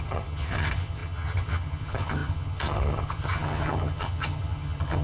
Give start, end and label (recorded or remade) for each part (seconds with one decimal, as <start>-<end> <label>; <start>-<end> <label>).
0.0-5.0 remade